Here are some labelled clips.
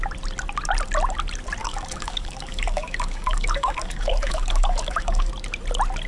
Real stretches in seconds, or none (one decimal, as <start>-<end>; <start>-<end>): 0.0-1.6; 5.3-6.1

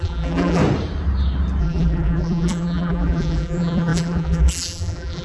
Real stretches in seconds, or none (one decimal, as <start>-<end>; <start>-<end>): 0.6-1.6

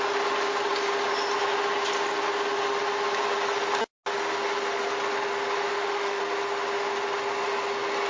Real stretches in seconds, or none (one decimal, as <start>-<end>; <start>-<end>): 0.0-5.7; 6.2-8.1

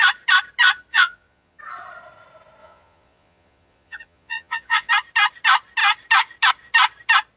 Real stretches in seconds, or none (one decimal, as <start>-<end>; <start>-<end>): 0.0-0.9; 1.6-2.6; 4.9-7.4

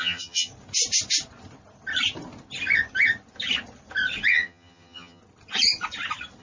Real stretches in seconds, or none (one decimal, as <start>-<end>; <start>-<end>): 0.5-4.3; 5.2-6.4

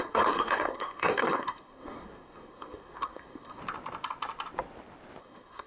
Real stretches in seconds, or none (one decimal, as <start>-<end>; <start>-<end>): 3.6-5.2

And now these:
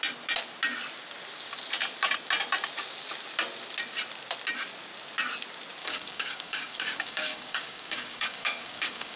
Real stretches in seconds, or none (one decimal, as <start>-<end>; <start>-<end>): 0.0-5.8

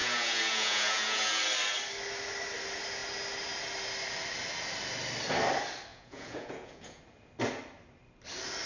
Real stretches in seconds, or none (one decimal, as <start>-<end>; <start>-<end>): 1.4-5.9; 7.0-8.7